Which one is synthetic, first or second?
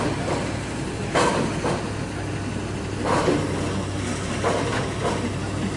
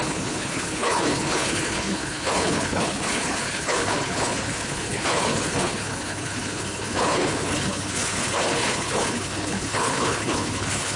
second